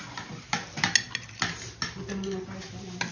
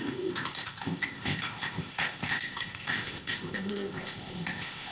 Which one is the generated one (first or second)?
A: second